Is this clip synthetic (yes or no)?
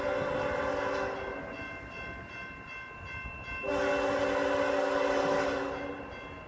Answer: no